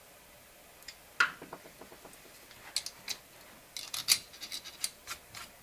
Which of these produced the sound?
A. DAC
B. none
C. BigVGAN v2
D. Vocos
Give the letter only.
B